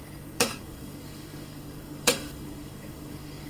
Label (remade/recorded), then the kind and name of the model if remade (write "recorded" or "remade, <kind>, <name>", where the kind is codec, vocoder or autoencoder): remade, codec, DAC